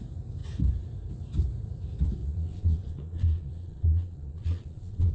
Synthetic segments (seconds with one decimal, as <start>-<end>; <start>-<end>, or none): 2.2-5.1